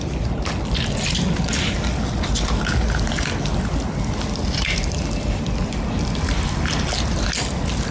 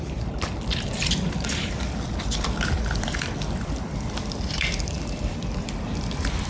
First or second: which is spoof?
second